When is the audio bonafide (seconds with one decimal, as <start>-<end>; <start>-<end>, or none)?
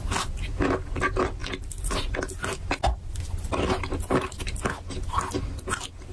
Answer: 0.0-6.1